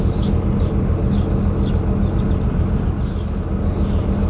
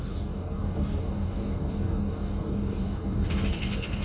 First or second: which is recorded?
first